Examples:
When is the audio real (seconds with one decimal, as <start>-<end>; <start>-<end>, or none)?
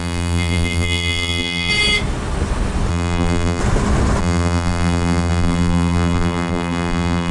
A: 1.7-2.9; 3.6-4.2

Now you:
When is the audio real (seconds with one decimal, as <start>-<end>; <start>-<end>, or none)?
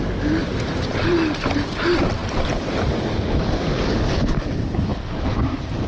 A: 0.0-5.9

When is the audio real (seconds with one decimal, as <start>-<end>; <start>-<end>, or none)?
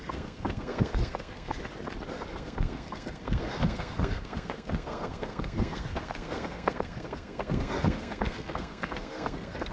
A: 1.6-2.3